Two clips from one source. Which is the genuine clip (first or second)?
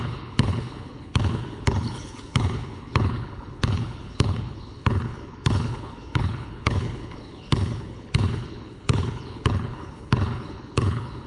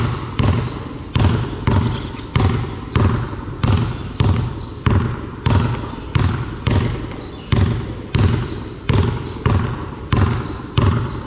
second